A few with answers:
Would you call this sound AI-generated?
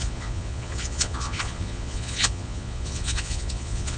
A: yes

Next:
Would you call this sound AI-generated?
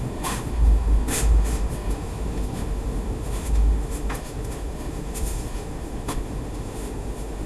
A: yes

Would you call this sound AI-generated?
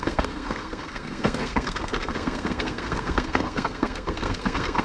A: yes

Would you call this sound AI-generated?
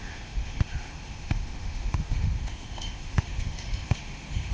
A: yes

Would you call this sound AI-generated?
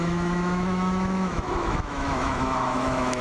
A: yes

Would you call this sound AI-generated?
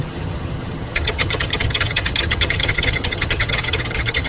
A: yes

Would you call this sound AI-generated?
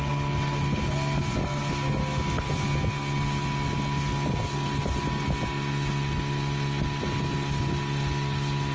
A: no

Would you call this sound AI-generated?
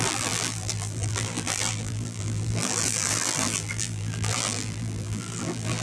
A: yes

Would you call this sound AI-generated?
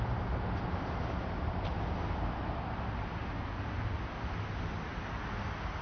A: no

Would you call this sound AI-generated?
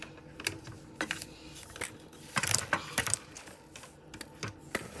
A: no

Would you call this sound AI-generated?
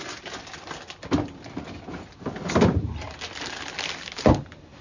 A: no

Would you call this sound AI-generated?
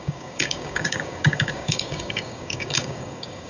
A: yes